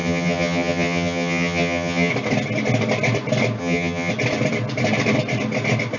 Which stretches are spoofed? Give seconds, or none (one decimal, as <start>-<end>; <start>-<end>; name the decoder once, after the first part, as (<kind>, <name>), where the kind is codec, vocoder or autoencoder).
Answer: 0.0-2.1 (vocoder, HiFi-GAN); 3.6-4.1

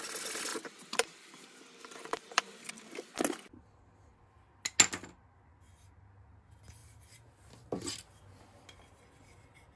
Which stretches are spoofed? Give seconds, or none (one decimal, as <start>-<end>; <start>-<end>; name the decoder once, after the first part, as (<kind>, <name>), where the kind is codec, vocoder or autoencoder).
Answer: 0.5-2.7 (vocoder, BigVGAN v2)

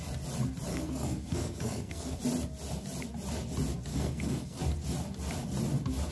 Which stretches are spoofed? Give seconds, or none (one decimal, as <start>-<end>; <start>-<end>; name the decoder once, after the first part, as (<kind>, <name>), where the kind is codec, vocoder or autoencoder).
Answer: 0.7-2.2 (codec, SNAC); 3.9-4.6

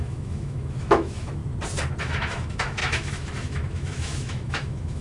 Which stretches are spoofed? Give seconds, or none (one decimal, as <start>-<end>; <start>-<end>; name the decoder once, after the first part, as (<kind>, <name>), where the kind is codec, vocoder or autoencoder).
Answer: 0.0-1.4 (autoencoder, DAC-VAE); 2.0-5.0

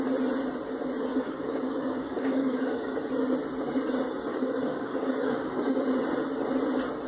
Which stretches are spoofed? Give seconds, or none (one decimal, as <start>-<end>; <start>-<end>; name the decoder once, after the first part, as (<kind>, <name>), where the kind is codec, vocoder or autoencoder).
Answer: 1.1-3.1 (codec, DAC); 4.3-5.8

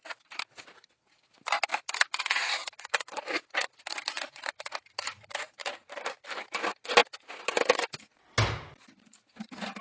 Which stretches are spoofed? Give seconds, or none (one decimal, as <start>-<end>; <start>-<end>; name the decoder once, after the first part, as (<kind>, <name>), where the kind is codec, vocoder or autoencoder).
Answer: 1.7-6.6 (vocoder, BigVGAN v2)